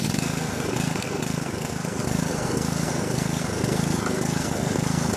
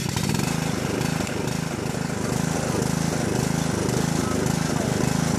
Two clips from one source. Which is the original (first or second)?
second